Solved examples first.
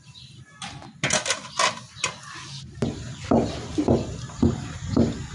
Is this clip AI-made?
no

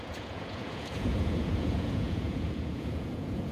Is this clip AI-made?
yes